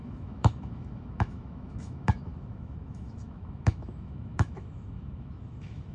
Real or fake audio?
fake